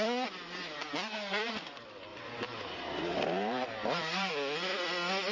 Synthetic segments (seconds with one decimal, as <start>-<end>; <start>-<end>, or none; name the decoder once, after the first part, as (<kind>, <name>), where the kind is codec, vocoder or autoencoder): 2.1-4.3 (vocoder, BigVGAN v2)